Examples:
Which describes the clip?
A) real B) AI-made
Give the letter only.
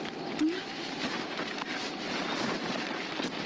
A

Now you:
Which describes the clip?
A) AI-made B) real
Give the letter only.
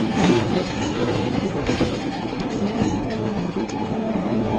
A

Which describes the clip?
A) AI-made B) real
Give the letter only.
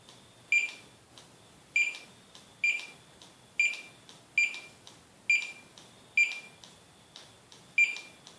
B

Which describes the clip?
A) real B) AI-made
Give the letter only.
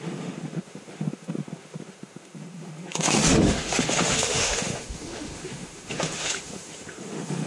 B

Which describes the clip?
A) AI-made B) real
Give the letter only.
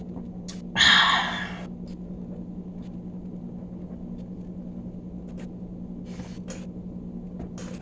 B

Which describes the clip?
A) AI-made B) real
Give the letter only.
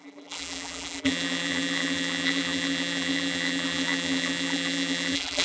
A